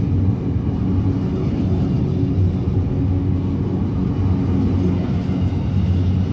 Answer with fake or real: real